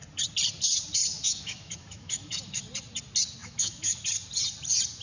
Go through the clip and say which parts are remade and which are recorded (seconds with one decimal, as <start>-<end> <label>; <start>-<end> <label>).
0.0-1.1 recorded; 1.1-2.6 remade; 2.6-3.4 recorded; 3.4-4.0 remade; 4.0-5.0 recorded